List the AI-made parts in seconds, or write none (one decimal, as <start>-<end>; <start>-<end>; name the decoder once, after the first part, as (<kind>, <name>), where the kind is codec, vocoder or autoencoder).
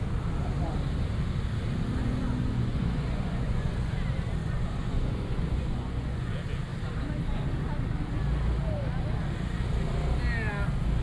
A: 2.0-3.9 (vocoder, Vocos); 4.4-6.3